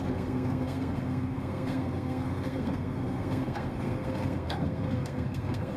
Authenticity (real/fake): fake